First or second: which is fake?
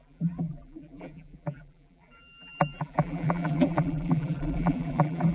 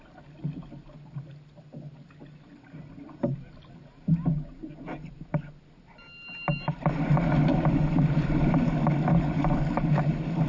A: first